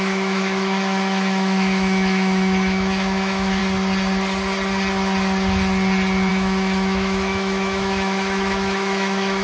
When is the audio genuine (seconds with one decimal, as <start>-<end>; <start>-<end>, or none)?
3.6-6.3